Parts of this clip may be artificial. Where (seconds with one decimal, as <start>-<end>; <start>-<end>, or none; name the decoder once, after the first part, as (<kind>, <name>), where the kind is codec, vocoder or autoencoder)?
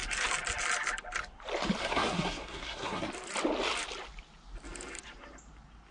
1.8-3.1 (codec, SNAC)